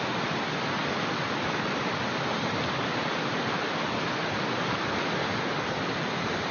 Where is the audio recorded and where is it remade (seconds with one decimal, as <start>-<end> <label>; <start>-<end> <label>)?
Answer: 0.0-6.5 recorded